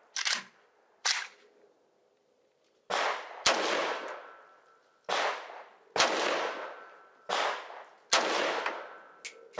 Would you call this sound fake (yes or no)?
no